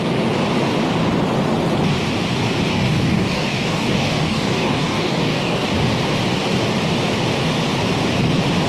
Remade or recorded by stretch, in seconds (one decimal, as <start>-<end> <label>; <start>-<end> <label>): 0.0-2.7 recorded; 2.7-5.7 remade; 5.7-8.7 recorded